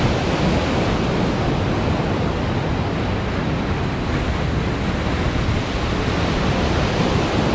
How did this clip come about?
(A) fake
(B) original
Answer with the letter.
B